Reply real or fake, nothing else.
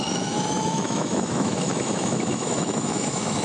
fake